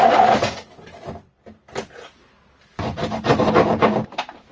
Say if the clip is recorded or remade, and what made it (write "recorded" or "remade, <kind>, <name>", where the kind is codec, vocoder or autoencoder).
recorded